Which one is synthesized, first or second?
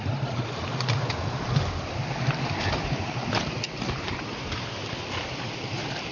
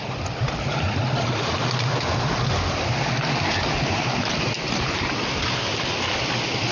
first